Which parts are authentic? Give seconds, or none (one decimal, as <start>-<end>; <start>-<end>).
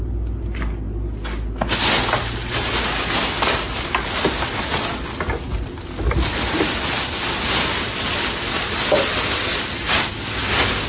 0.0-10.9